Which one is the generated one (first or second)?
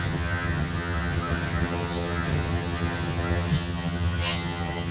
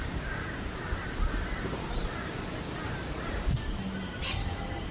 first